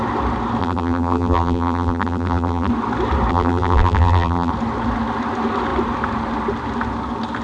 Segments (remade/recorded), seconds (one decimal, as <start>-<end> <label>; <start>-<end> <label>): 0.0-0.6 recorded; 0.6-2.7 remade; 2.7-3.3 recorded; 3.3-4.5 remade; 4.5-7.4 recorded